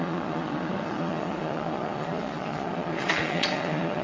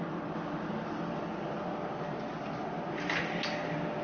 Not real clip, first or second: first